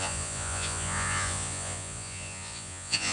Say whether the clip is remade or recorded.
remade